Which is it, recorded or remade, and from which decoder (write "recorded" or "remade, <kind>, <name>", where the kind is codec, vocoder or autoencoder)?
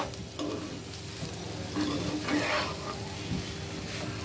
recorded